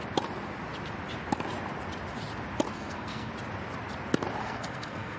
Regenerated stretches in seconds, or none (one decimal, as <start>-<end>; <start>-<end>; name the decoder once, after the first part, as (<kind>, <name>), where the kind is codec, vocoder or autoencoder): 2.7-3.3 (codec, SNAC); 4.4-5.2